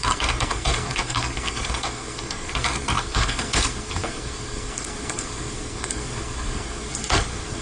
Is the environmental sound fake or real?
fake